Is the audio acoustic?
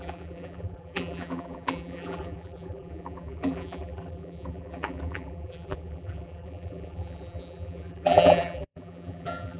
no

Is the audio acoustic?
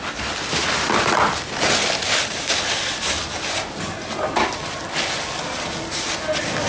yes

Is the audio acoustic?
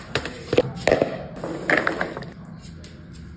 yes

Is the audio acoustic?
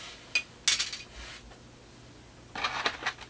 yes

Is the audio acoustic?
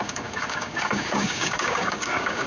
no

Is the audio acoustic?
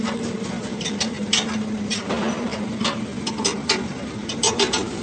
no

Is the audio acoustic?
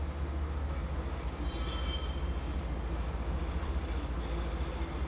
yes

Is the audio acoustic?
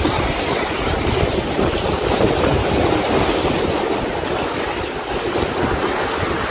yes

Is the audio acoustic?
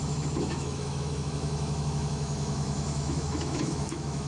no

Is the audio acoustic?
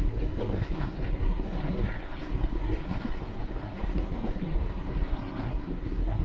no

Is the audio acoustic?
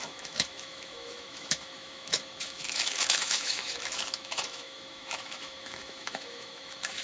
no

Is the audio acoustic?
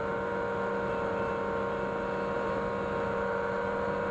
yes